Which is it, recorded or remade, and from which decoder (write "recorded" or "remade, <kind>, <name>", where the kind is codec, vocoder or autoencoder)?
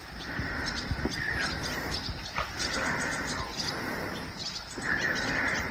recorded